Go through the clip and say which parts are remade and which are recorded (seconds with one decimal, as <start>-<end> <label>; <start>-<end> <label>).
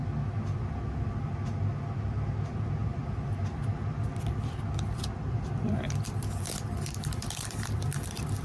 0.0-1.6 recorded; 1.6-8.4 remade